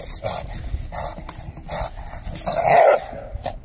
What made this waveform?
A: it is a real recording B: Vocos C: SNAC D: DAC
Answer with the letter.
A